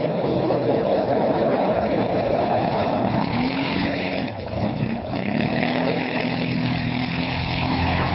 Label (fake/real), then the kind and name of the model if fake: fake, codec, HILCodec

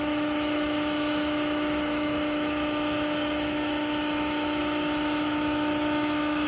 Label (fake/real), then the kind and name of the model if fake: fake, autoencoder, DAC-VAE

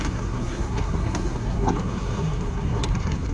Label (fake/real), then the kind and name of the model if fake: fake, codec, SNAC